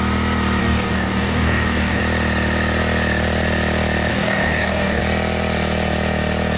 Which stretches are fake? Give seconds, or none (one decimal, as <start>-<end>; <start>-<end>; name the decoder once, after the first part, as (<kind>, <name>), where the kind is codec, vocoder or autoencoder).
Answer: 0.6-2.0 (codec, DAC); 4.1-5.0

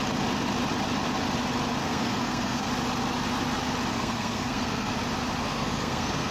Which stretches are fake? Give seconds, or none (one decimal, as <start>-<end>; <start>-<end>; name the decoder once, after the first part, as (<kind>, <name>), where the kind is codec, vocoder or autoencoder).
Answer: 1.8-2.7 (codec, SNAC); 3.9-4.9; 5.4-6.3

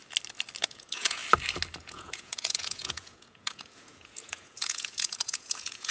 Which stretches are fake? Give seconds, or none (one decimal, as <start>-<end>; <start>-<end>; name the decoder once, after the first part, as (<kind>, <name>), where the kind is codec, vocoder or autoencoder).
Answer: 0.6-1.2 (vocoder, Vocos); 1.8-5.9

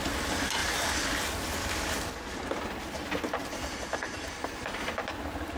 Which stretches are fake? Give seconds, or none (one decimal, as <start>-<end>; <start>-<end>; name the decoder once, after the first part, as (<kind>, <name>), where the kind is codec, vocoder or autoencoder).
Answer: none

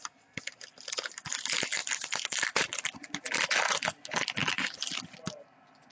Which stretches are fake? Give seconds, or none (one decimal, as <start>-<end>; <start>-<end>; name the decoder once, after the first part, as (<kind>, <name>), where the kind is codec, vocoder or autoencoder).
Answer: none

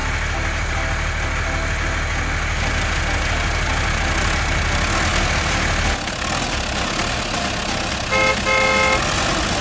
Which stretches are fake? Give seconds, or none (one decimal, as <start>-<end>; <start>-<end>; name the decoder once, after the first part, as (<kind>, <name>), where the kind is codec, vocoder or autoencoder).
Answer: none

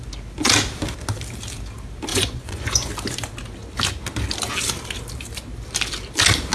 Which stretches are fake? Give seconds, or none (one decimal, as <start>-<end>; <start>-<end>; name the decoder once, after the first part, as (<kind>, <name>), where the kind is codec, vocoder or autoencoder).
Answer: 2.1-2.9 (vocoder, Vocos)

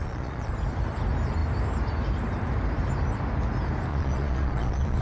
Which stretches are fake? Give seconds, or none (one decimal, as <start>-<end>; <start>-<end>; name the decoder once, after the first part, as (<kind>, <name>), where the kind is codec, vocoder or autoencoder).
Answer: 0.0-0.5 (vocoder, Vocos); 3.9-5.0